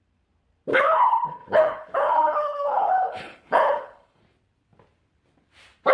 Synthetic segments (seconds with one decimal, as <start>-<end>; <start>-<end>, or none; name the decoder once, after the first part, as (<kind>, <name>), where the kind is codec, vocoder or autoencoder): 0.7-4.2 (codec, HILCodec)